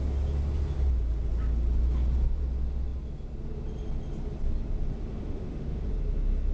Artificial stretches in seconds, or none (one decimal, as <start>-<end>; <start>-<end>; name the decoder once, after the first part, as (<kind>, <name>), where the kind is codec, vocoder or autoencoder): 5.1-5.9 (autoencoder, DAC-VAE)